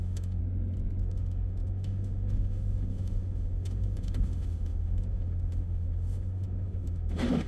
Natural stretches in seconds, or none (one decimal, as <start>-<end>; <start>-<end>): 0.4-1.0